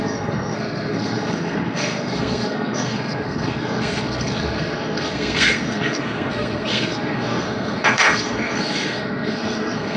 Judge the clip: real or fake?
fake